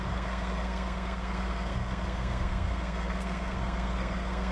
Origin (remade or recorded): remade